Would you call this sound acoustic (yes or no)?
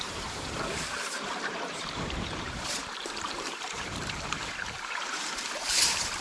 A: no